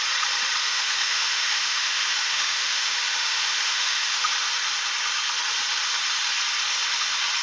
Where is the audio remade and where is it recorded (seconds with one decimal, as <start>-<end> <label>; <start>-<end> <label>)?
0.0-0.6 recorded; 0.6-4.3 remade; 4.3-7.4 recorded